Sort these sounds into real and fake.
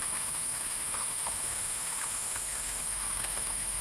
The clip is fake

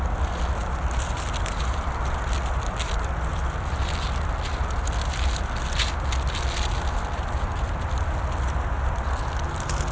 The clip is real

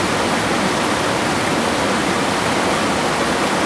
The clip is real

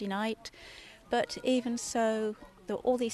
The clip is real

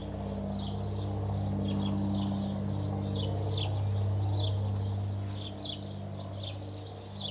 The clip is real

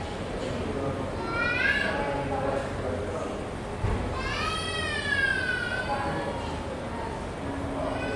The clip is real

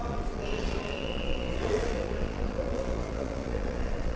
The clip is fake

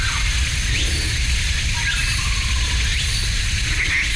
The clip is real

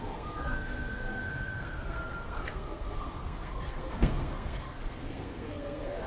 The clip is fake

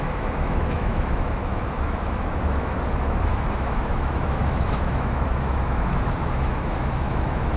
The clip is fake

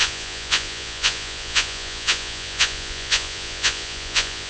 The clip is fake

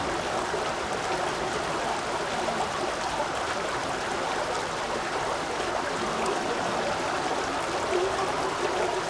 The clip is real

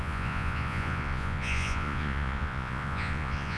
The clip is fake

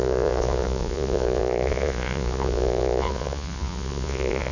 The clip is fake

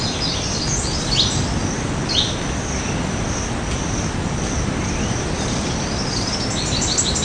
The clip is real